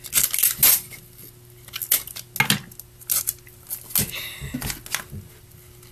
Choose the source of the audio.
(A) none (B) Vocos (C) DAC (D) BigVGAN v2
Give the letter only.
A